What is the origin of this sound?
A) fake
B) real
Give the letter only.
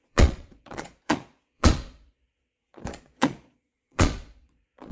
A